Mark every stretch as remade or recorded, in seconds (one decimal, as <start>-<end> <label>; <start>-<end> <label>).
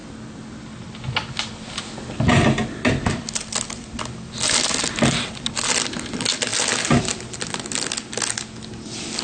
0.0-9.2 recorded